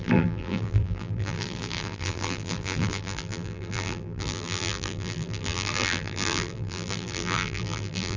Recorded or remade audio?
remade